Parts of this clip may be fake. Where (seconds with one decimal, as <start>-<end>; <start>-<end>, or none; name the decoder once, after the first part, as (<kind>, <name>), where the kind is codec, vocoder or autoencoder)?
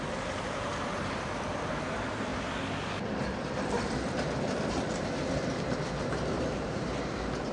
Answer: 0.0-2.3 (vocoder, BigVGAN v2); 5.7-7.5